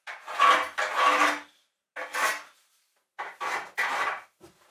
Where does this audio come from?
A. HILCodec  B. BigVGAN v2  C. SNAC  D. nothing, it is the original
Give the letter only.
D